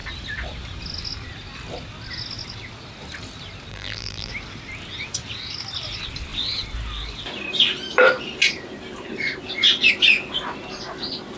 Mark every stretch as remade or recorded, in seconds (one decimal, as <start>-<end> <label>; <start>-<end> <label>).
0.0-3.7 recorded; 3.7-4.3 remade; 4.3-11.4 recorded

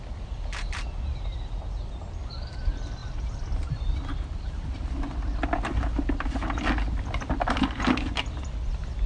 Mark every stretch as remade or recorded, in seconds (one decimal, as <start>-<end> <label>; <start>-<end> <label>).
0.0-9.1 remade

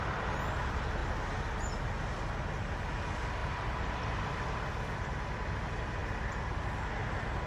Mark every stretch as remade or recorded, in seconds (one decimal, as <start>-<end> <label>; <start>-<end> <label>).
0.0-3.4 recorded; 3.4-4.7 remade; 4.7-6.0 recorded; 6.0-6.6 remade; 6.6-7.5 recorded

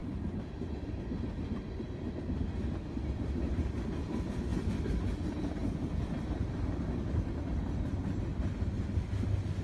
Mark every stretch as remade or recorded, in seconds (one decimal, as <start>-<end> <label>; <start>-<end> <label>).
0.0-5.6 recorded; 5.6-6.2 remade; 6.2-9.6 recorded

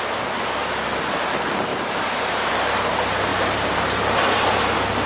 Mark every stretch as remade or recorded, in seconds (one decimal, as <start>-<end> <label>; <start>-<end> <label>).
0.0-1.7 recorded; 1.7-2.5 remade; 2.5-3.3 recorded; 3.3-4.0 remade; 4.0-5.1 recorded

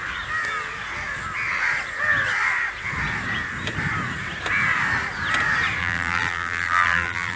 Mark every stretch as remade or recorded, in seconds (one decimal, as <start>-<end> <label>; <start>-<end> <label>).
0.0-5.8 recorded; 5.8-7.4 remade

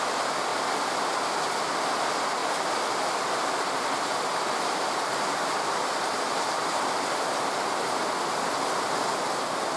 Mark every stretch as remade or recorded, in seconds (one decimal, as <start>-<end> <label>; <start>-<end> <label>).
0.0-0.5 recorded; 0.5-1.2 remade; 1.2-2.4 recorded; 2.4-6.8 remade; 6.8-9.8 recorded

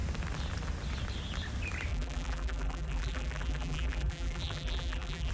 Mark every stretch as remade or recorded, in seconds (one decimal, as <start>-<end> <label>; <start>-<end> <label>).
0.0-1.9 recorded; 1.9-5.3 remade